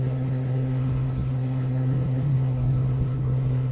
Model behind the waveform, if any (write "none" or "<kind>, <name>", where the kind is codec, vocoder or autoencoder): codec, SNAC